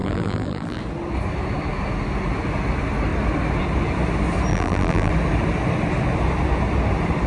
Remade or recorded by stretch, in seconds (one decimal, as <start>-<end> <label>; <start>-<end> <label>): 0.0-0.8 remade; 0.8-4.5 recorded; 4.5-5.1 remade; 5.1-7.3 recorded